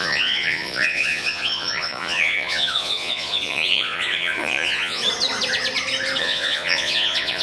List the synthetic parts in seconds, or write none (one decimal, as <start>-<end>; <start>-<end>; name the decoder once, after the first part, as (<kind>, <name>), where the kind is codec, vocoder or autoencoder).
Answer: 0.0-5.0 (vocoder, Vocos); 6.2-7.4